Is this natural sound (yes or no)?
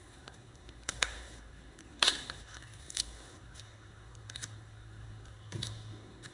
no